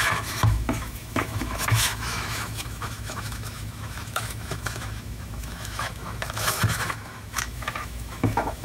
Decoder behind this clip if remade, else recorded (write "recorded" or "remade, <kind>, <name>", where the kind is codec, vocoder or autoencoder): remade, autoencoder, DAC-VAE